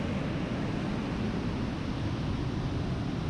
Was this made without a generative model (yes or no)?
yes